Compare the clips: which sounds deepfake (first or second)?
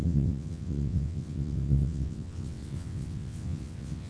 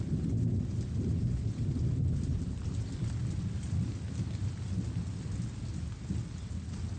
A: first